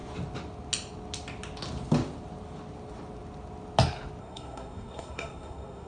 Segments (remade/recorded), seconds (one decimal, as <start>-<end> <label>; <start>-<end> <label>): 0.0-4.2 recorded; 4.2-5.9 remade